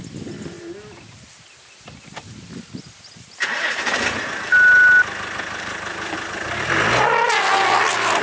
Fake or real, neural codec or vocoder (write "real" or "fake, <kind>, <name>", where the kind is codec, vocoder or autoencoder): real